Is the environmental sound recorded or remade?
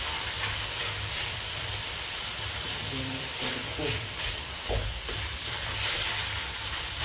remade